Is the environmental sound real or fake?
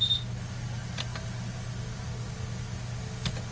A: real